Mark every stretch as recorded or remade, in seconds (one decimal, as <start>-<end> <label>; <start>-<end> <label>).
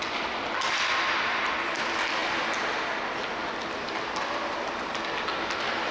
0.0-2.2 recorded; 2.2-2.8 remade; 2.8-3.4 recorded; 3.4-5.0 remade; 5.0-5.9 recorded